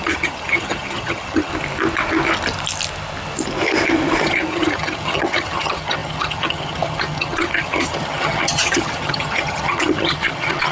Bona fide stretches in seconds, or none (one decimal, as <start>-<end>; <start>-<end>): 1.5-4.2